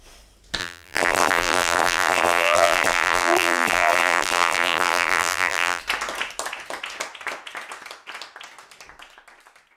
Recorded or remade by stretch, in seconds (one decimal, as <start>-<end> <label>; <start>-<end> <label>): 0.0-0.6 recorded; 0.6-5.8 remade; 5.8-9.8 recorded